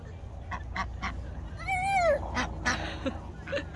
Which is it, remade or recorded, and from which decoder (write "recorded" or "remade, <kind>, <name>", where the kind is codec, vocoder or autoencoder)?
recorded